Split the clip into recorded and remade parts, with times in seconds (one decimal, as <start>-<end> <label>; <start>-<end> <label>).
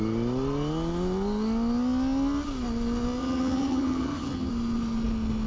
0.0-3.2 recorded; 3.2-4.5 remade; 4.5-5.5 recorded